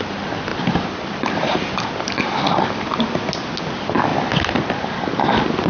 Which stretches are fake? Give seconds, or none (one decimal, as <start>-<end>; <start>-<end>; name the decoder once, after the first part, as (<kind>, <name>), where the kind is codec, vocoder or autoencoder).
none